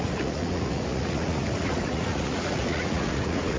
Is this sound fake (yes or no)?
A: yes